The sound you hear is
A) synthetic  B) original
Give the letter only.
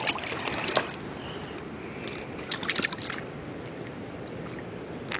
B